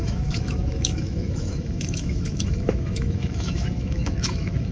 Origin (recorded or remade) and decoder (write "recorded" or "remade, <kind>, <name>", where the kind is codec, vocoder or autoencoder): remade, autoencoder, DAC-VAE